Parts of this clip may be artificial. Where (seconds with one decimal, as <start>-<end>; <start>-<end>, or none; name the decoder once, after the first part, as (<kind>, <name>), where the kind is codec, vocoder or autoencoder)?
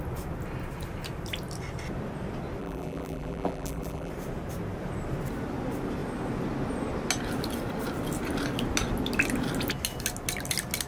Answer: 2.6-4.1 (vocoder, BigVGAN v2)